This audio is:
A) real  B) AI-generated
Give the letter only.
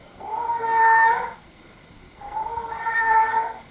B